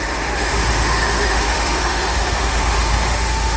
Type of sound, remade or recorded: remade